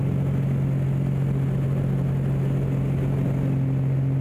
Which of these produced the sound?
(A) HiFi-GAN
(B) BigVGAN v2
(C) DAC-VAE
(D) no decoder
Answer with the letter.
D